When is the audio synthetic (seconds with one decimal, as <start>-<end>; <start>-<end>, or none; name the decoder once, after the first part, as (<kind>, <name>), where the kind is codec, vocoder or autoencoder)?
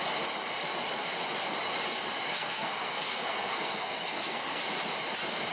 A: 2.3-4.6 (codec, SNAC)